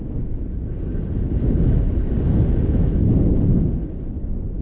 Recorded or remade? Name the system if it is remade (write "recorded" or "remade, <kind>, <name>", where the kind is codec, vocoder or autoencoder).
recorded